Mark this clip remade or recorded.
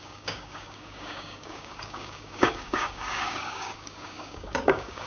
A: remade